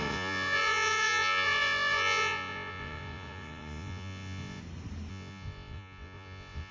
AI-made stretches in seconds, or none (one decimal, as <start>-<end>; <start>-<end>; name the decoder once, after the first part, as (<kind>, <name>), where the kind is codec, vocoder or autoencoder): 0.0-4.6 (vocoder, Vocos); 5.1-6.7